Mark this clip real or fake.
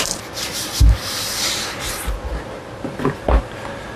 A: real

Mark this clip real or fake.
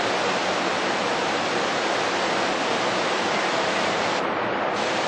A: real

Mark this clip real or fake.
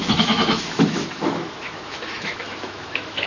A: fake